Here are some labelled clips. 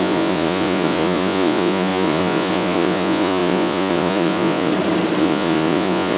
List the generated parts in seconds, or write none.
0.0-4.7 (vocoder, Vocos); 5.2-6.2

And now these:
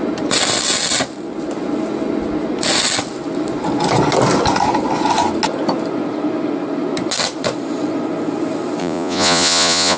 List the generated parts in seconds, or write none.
8.8-10.0 (vocoder, Vocos)

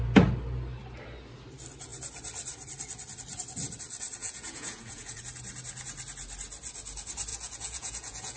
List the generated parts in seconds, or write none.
4.2-5.2 (vocoder, Vocos); 7.3-8.4

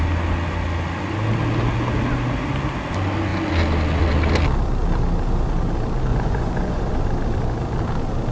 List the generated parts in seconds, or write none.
6.1-6.9 (vocoder, Vocos)

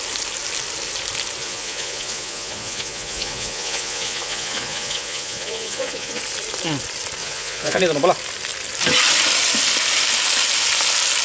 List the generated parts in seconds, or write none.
1.4-6.2 (vocoder, Vocos); 7.2-7.8